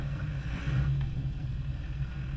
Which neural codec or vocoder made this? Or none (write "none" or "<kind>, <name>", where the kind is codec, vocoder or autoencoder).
codec, SNAC